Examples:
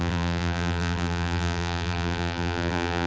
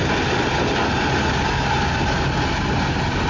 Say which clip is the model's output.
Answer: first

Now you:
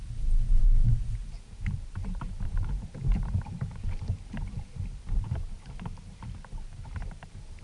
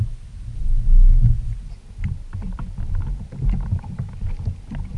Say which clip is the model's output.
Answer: first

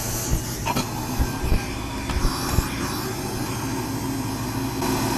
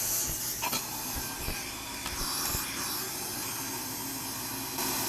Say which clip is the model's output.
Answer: second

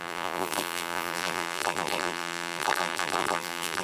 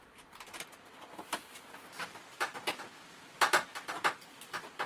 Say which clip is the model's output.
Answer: first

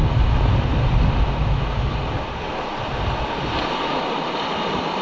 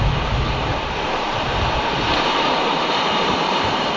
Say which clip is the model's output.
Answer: second